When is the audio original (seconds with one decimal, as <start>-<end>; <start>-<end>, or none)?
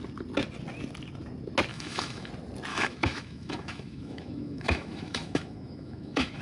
0.0-1.7; 2.3-2.7